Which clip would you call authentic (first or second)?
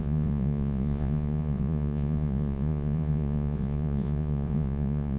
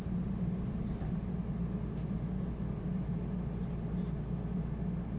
second